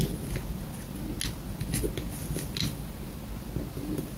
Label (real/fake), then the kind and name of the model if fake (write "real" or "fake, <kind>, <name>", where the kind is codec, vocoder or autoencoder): real